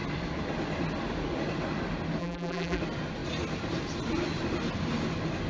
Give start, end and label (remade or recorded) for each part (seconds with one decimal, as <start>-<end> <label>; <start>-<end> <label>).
0.0-2.2 recorded; 2.2-2.8 remade; 2.8-5.5 recorded